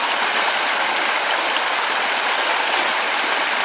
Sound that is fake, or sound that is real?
real